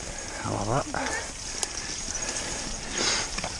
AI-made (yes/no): no